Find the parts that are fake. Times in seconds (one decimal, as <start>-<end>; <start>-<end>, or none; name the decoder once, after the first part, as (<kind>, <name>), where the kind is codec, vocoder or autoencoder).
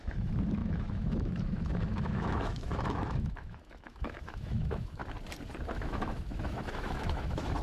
0.0-5.0 (autoencoder, DAC-VAE); 5.7-7.6